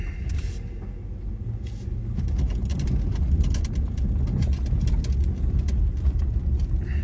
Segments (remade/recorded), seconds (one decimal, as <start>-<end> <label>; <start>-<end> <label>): 0.0-7.0 recorded